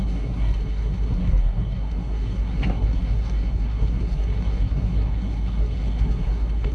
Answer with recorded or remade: remade